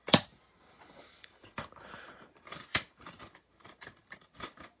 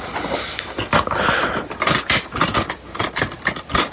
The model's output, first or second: first